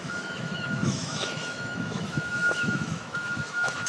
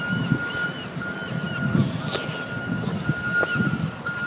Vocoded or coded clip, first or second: first